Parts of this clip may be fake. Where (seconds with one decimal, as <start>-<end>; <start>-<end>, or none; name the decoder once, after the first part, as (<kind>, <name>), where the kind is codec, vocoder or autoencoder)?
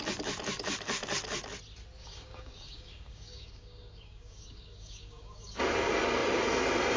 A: 2.0-5.6 (codec, DAC)